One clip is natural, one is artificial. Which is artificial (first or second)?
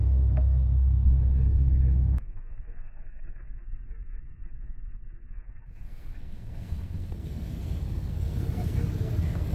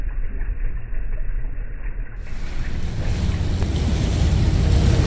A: first